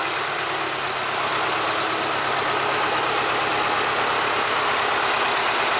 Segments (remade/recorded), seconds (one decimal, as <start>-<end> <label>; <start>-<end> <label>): 0.0-5.8 recorded